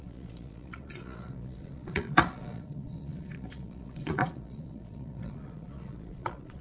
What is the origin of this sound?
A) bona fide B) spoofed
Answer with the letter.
B